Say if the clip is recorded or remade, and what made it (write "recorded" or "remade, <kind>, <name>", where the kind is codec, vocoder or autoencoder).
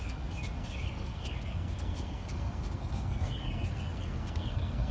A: remade, codec, SNAC